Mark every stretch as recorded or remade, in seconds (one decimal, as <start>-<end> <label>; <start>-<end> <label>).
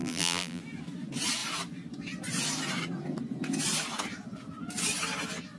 0.0-0.6 remade; 0.6-5.6 recorded